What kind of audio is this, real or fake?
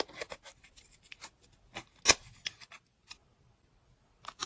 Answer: real